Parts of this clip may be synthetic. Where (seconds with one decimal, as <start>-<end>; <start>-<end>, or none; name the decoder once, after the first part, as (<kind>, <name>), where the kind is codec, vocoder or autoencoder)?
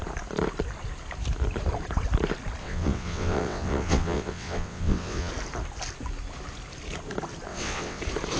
2.6-5.3 (vocoder, WaveNeXt); 7.5-8.0